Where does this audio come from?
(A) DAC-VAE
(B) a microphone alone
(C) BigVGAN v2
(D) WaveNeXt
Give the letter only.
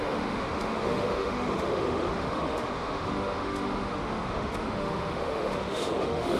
A